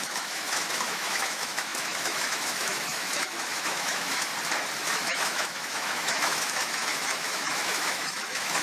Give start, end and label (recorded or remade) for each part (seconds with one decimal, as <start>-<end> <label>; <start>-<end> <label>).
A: 0.0-4.3 remade; 4.3-4.9 recorded; 4.9-8.6 remade